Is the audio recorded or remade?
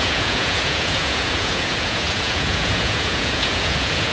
remade